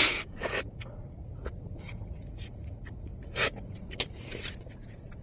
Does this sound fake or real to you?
fake